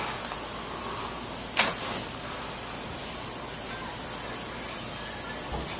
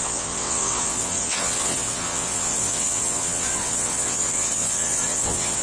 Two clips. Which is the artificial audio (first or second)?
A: second